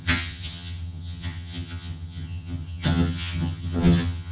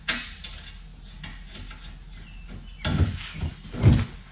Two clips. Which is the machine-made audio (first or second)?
first